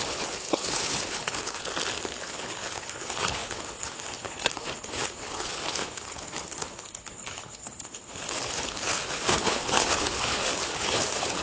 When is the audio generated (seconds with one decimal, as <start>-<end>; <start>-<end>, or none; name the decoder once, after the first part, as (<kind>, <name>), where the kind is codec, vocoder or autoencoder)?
0.0-1.7 (codec, HILCodec); 2.2-11.4

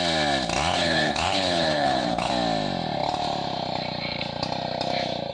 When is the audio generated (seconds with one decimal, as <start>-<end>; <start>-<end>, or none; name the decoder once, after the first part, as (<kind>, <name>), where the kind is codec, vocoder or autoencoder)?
0.7-2.3 (codec, HILCodec)

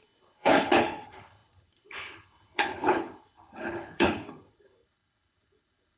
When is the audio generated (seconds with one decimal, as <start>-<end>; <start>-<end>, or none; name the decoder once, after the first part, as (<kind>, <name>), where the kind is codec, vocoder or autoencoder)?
0.0-6.0 (codec, HILCodec)

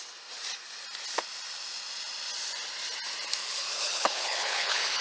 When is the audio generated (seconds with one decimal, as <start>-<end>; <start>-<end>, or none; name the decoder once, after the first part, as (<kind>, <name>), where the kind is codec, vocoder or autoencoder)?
3.4-5.0 (codec, HILCodec)

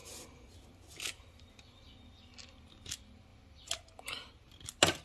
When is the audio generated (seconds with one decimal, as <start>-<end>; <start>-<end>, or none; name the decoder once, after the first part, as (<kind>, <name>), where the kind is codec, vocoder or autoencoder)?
none